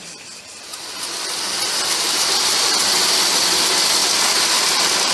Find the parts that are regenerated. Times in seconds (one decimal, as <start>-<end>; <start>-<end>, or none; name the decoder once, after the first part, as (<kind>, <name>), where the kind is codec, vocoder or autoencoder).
0.0-0.7 (vocoder, BigVGAN v2); 3.0-5.1